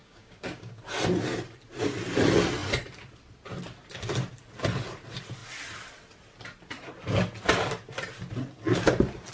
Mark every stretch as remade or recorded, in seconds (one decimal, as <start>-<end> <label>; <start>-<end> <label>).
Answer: 0.0-0.8 remade; 0.8-9.3 recorded